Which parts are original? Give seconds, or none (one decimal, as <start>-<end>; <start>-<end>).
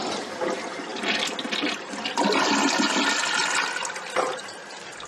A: 0.0-5.1